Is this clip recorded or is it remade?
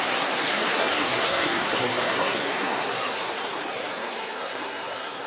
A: remade